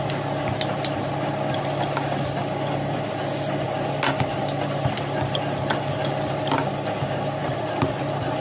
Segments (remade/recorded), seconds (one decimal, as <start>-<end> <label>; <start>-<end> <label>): 0.0-8.4 recorded

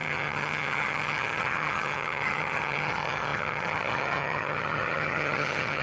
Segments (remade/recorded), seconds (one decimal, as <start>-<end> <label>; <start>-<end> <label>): 0.0-5.8 remade

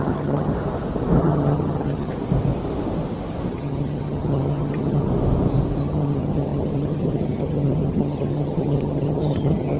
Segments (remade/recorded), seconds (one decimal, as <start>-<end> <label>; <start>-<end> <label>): 0.0-0.5 remade; 0.5-1.2 recorded; 1.2-2.1 remade; 2.1-3.5 recorded; 3.5-5.1 remade; 5.1-5.8 recorded; 5.8-9.8 remade

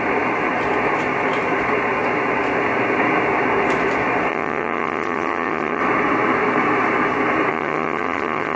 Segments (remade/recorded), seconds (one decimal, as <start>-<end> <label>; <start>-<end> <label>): 0.0-4.3 recorded; 4.3-5.8 remade; 5.8-7.5 recorded; 7.5-8.6 remade

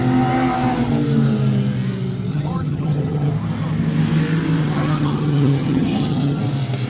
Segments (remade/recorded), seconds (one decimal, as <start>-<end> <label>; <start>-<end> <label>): 0.0-2.3 recorded; 2.3-3.3 remade; 3.3-4.6 recorded; 4.6-6.4 remade; 6.4-6.9 recorded

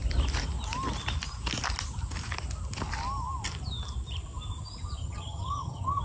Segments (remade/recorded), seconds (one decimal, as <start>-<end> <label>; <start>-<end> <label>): 0.0-5.0 recorded; 5.0-6.0 remade